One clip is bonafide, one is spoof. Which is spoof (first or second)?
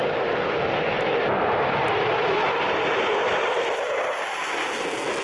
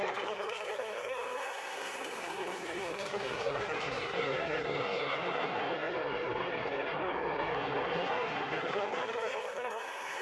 second